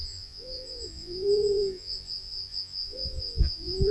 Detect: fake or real fake